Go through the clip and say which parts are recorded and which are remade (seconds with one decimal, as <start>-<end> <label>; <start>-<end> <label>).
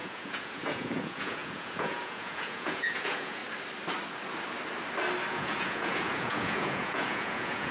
0.0-3.4 remade; 3.4-5.3 recorded; 5.3-7.7 remade